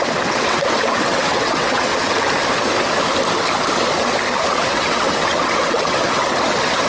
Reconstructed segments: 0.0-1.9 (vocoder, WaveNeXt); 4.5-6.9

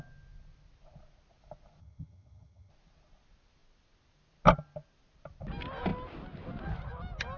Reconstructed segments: 1.8-2.7 (vocoder, HiFi-GAN)

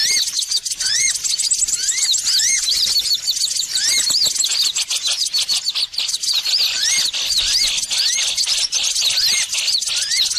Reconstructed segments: none

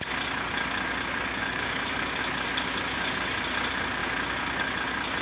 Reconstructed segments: 1.4-2.2 (codec, DAC)